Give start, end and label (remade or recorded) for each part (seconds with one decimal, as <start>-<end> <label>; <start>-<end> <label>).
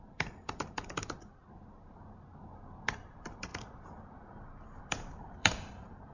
0.0-1.4 remade; 1.4-2.9 recorded; 2.9-3.5 remade; 3.5-4.8 recorded; 4.8-6.1 remade